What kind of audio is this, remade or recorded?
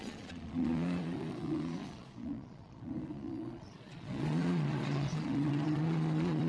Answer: remade